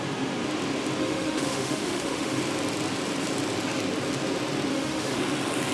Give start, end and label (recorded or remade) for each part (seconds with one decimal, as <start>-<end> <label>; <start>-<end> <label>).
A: 0.0-1.0 recorded; 1.0-2.4 remade; 2.4-4.7 recorded; 4.7-5.2 remade; 5.2-5.7 recorded